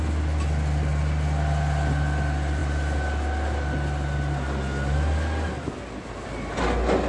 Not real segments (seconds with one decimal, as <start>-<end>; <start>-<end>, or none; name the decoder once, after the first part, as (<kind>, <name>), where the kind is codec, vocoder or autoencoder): none